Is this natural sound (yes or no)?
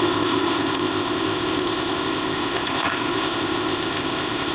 no